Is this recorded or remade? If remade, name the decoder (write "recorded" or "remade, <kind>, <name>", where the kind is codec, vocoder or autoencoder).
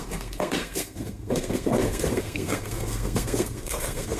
remade, codec, SNAC